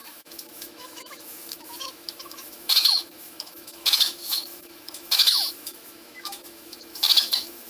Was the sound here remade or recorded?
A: remade